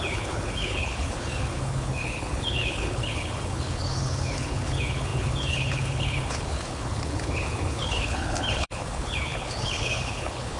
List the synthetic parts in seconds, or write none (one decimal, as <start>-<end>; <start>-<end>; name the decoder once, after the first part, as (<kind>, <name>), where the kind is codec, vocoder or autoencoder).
0.0-10.6 (codec, HILCodec)